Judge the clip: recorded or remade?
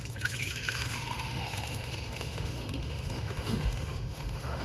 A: remade